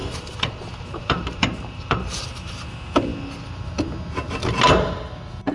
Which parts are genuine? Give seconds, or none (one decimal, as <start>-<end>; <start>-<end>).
2.5-5.5